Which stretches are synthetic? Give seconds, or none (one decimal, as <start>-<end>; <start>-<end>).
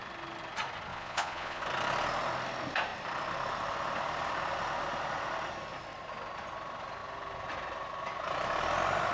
0.9-1.6